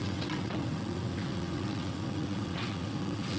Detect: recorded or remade remade